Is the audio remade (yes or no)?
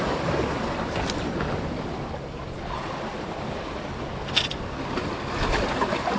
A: no